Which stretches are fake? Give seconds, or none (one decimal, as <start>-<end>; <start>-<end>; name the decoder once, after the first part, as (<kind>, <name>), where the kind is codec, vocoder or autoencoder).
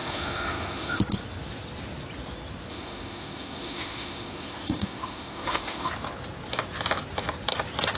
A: 0.0-1.0 (autoencoder, DAC-VAE); 2.7-5.9